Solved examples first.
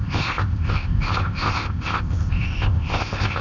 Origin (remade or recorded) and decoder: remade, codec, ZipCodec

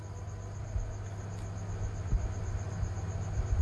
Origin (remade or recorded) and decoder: recorded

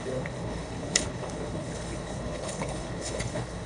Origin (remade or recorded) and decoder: remade, codec, HILCodec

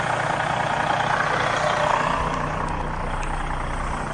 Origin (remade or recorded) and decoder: recorded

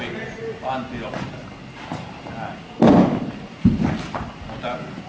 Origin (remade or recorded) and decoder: recorded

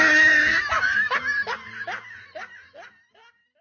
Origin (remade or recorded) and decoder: recorded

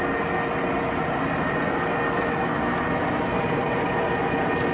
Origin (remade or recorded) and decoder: recorded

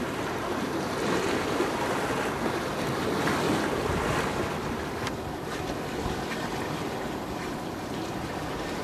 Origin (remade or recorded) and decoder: recorded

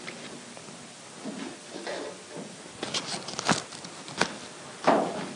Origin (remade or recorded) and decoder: recorded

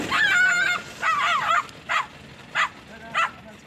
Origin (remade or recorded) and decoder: recorded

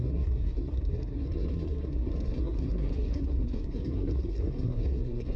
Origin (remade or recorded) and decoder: remade, codec, SNAC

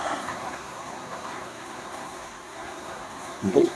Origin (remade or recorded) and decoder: remade, codec, SNAC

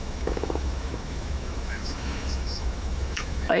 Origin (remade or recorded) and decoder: remade, autoencoder, DAC-VAE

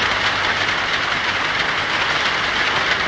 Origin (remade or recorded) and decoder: recorded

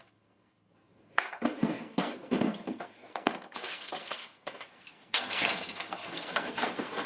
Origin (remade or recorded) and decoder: remade, codec, SNAC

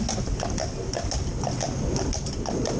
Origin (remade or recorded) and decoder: recorded